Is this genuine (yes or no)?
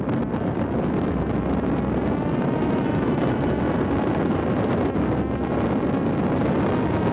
yes